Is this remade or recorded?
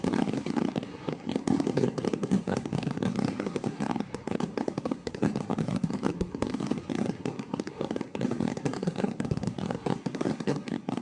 remade